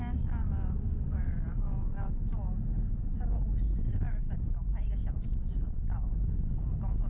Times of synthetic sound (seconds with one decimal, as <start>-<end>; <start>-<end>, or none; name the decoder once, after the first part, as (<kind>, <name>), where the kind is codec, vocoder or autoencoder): 0.4-1.3 (vocoder, Vocos)